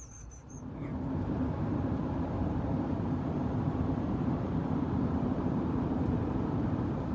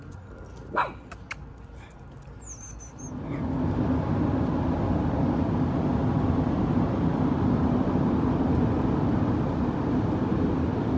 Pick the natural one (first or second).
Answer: second